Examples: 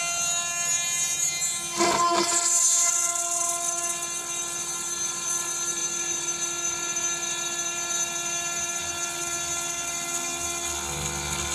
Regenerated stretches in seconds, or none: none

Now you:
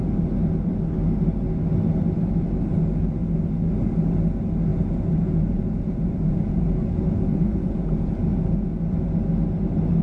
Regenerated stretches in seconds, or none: 4.7-8.7 (vocoder, Vocos)

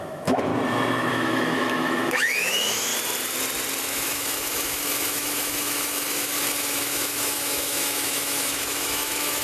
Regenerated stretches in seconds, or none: 0.0-0.5 (autoencoder, DAC-VAE); 1.1-2.9; 3.8-9.4

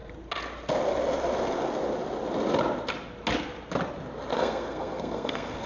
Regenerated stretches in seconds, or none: 4.3-5.7 (codec, SNAC)

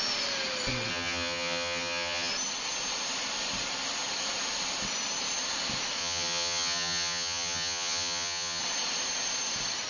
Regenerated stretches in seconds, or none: 0.9-2.3 (vocoder, HiFi-GAN); 6.0-8.6

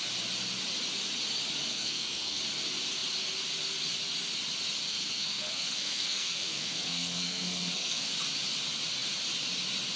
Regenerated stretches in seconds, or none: 1.7-2.4 (codec, SNAC); 4.8-8.1